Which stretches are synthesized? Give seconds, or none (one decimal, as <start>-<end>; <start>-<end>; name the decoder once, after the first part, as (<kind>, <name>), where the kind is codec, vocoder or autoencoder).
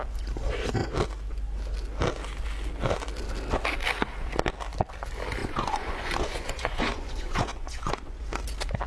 5.4-8.2 (vocoder, Vocos)